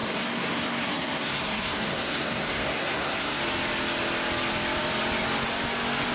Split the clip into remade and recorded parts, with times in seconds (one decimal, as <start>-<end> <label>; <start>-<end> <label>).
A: 0.0-3.4 remade; 3.4-6.1 recorded